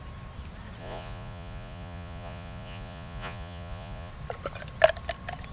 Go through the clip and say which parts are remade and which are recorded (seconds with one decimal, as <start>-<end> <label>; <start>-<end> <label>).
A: 0.0-0.8 recorded; 0.8-4.1 remade; 4.1-5.5 recorded